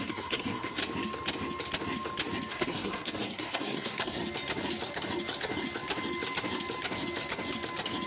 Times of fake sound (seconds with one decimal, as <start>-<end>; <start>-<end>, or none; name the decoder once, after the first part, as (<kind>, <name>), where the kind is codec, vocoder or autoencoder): 0.0-0.8 (codec, SNAC); 2.5-4.2